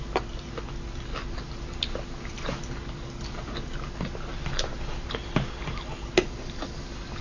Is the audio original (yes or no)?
yes